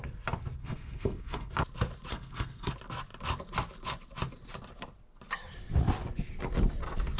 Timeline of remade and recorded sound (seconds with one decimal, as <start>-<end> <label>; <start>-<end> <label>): 0.0-0.6 recorded; 0.6-1.5 remade; 1.5-2.1 recorded; 2.1-2.7 remade; 2.7-7.2 recorded